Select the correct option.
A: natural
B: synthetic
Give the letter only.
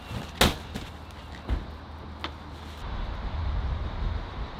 A